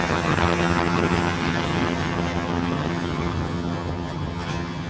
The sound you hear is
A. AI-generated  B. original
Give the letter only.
A